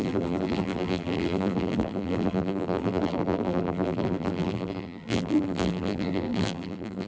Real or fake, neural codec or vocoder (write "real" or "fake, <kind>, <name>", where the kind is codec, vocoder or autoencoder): fake, vocoder, BigVGAN v2